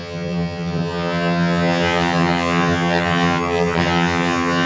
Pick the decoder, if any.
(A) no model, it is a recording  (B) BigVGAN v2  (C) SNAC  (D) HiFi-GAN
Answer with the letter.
D